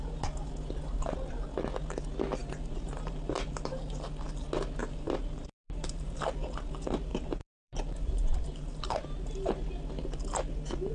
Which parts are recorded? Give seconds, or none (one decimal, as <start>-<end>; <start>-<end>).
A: 0.0-2.4; 3.8-4.8; 6.3-7.1; 9.6-10.9